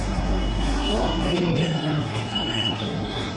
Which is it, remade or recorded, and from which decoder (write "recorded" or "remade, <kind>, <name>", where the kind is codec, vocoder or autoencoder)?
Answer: remade, codec, SNAC